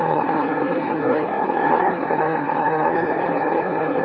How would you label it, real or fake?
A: fake